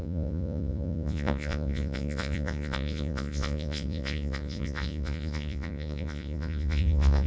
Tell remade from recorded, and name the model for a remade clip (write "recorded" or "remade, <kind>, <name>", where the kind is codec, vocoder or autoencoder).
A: remade, vocoder, Vocos